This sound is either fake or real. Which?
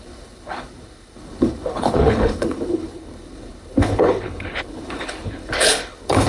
fake